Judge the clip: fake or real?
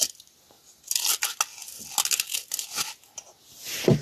real